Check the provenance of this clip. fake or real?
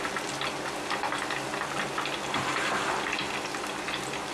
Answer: real